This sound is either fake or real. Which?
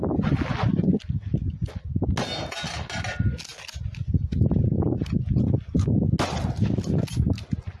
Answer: real